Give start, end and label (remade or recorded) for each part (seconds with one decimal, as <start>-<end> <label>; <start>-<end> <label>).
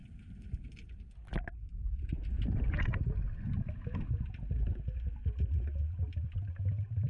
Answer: 0.0-7.1 recorded